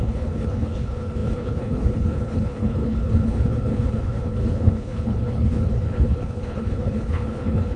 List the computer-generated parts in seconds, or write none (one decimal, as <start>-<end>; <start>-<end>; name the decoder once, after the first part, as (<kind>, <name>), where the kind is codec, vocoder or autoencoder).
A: 0.0-7.8 (codec, HILCodec)